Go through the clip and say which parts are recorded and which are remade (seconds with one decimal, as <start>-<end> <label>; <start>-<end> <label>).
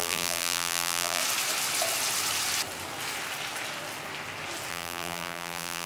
0.0-1.2 remade; 1.2-4.7 recorded; 4.7-5.9 remade